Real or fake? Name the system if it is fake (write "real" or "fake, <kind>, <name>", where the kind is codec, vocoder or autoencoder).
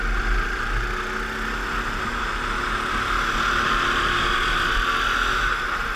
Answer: real